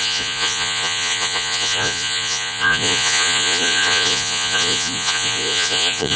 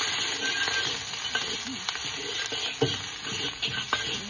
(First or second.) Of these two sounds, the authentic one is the second